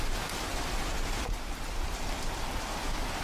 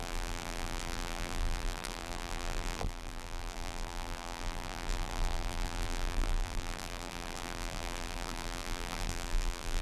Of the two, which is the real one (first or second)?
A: first